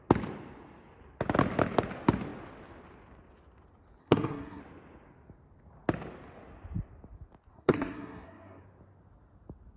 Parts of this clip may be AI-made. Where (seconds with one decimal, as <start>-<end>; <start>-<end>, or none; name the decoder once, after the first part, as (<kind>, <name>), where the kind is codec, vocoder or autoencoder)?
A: 4.0-4.6 (codec, SNAC); 7.5-8.6